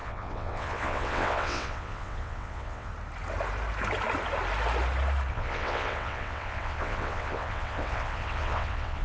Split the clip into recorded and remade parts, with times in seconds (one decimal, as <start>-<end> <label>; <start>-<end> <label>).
0.0-2.9 remade; 2.9-5.3 recorded; 5.3-9.0 remade